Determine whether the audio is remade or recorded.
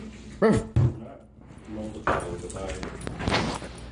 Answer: recorded